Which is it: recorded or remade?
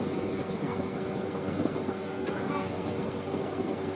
remade